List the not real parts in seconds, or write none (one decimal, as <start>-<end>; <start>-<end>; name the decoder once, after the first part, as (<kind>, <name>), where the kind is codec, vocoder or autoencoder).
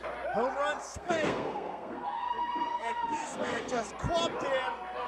0.8-3.9 (codec, SNAC)